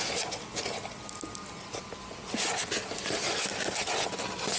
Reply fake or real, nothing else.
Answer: real